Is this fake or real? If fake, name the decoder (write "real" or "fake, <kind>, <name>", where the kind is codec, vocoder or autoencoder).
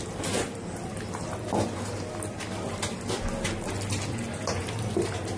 real